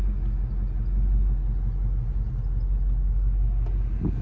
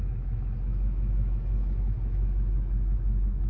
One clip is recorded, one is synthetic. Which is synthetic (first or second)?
second